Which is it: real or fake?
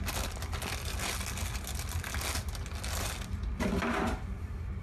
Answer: real